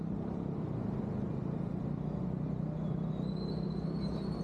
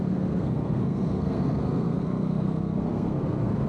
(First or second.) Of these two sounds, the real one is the first